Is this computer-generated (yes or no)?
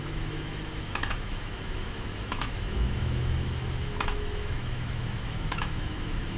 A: yes